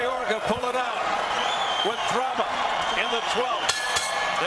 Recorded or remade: remade